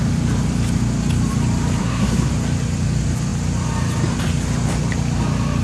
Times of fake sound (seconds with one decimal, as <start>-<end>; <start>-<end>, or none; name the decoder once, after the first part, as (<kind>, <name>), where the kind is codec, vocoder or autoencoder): 1.8-2.3 (codec, SNAC)